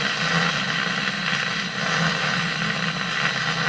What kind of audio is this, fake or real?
real